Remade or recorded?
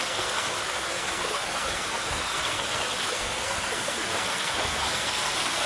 remade